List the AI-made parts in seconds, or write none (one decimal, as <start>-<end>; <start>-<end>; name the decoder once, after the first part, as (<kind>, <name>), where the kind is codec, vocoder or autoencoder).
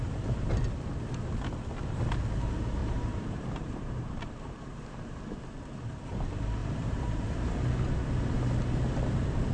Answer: 2.8-5.2 (vocoder, BigVGAN v2); 6.6-7.4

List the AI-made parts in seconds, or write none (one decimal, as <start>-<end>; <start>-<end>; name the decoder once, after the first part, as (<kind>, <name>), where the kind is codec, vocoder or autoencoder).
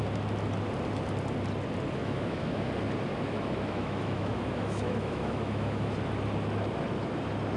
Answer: 2.0-2.7 (autoencoder, DAC-VAE); 3.1-5.9